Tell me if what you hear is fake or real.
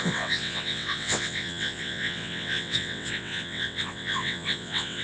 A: fake